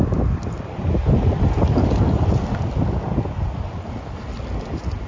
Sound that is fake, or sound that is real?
real